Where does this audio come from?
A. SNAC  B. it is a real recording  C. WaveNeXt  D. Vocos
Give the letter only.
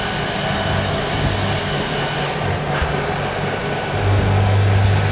B